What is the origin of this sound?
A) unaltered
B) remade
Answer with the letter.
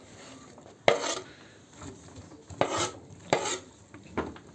A